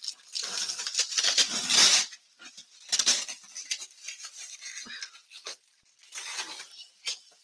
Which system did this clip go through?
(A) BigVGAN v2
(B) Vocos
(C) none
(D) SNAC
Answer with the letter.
C